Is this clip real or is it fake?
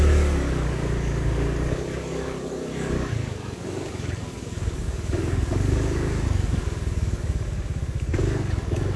fake